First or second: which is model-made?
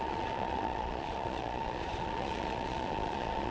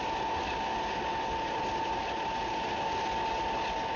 first